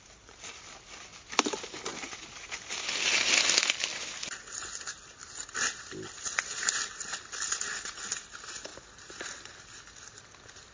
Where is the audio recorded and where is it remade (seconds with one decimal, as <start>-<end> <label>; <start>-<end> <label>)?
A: 0.0-10.7 recorded

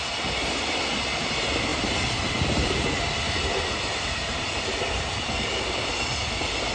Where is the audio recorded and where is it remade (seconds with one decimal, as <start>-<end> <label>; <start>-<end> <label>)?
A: 0.0-6.7 recorded

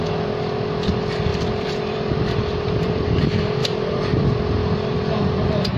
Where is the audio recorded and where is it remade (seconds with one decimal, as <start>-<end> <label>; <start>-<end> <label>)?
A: 0.0-1.3 recorded; 1.3-3.2 remade; 3.2-3.6 recorded; 3.6-4.2 remade; 4.2-5.8 recorded

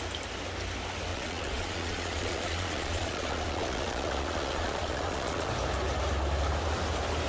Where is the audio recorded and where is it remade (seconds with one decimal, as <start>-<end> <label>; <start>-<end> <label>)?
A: 0.0-1.1 recorded; 1.1-5.5 remade; 5.5-7.3 recorded

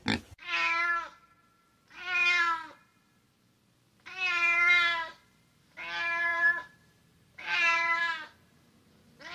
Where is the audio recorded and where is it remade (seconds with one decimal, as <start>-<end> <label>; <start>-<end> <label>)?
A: 0.0-6.3 recorded; 6.3-8.0 remade; 8.0-9.3 recorded